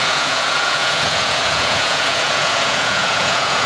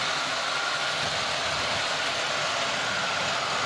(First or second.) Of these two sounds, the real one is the second